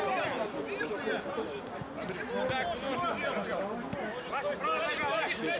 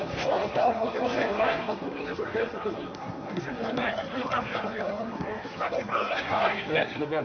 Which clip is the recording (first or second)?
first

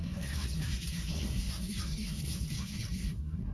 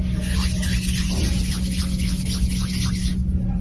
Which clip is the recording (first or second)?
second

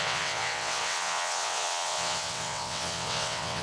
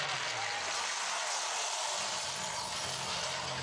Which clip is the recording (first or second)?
second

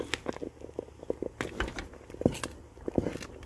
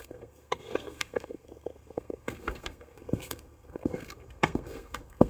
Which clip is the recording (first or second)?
first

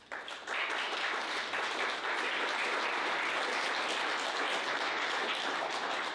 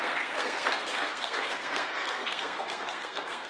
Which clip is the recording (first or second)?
first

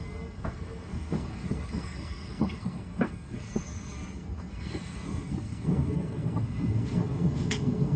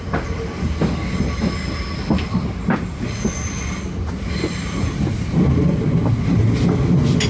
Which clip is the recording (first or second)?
second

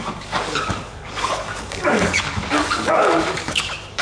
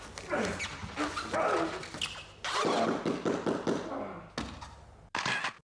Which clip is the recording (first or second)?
second